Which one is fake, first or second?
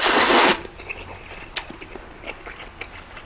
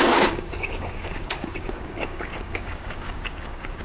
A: second